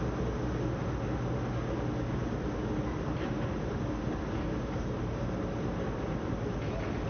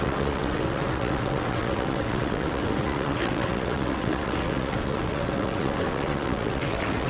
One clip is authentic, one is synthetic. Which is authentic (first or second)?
first